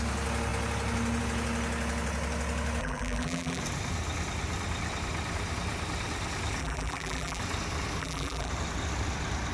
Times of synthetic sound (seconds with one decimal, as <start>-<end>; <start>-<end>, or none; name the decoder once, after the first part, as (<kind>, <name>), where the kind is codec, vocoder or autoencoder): 2.8-3.6 (vocoder, BigVGAN v2); 6.6-7.4; 8.0-8.5